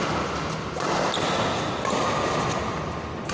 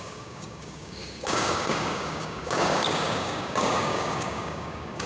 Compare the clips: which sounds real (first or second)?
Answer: first